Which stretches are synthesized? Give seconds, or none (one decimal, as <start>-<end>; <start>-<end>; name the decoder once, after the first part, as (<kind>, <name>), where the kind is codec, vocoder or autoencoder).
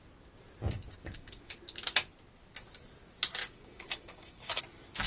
1.0-1.5 (codec, DAC); 3.4-4.6